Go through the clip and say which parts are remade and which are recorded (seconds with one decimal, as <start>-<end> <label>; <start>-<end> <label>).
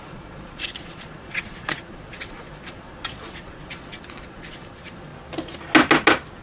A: 0.0-5.1 remade; 5.1-6.4 recorded